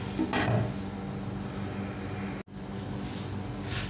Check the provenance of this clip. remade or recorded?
recorded